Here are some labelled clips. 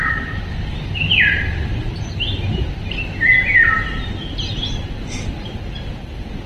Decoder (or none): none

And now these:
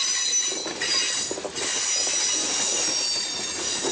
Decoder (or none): none